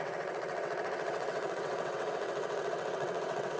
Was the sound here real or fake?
fake